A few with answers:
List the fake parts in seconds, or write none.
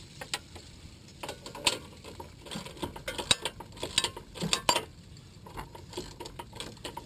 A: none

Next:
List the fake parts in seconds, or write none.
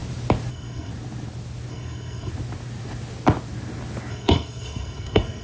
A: 0.5-0.9 (codec, SNAC); 1.7-2.3; 4.1-5.4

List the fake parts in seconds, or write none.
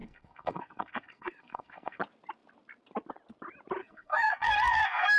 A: 0.0-2.0 (codec, SNAC); 3.8-5.2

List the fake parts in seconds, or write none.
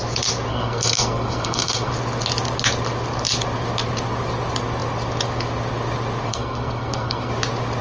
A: 0.5-1.9 (codec, SNAC); 6.3-7.3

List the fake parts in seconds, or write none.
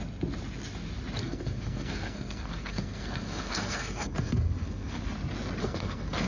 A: 1.2-5.0 (codec, SNAC); 5.6-6.3